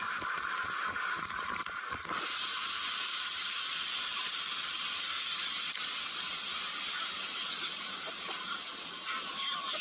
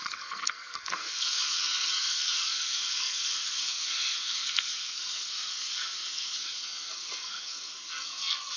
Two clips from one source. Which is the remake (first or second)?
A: second